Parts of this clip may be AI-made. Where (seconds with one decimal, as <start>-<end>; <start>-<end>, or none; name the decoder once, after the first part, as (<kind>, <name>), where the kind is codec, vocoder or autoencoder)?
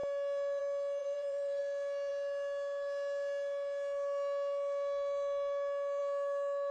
1.0-1.6 (vocoder, BigVGAN v2)